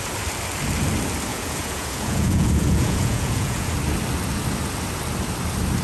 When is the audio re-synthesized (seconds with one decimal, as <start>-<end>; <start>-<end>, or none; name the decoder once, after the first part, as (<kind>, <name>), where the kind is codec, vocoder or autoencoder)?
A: 1.3-3.7 (vocoder, Vocos)